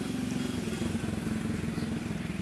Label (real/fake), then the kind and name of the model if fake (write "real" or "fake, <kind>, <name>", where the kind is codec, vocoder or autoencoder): real